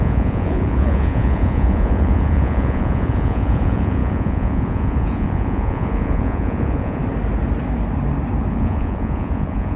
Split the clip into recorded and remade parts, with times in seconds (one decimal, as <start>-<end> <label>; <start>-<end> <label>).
0.0-7.0 remade; 7.0-8.5 recorded; 8.5-9.8 remade